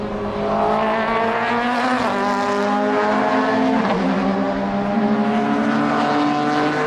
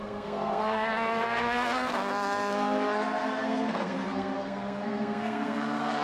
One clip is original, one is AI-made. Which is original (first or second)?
first